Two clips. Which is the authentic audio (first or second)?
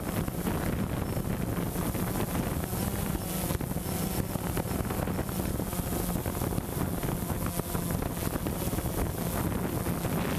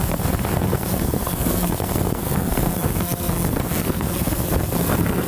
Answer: first